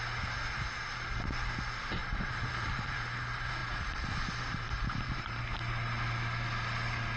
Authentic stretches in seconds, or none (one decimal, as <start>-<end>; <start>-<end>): 0.0-2.0; 3.0-3.6; 5.4-7.2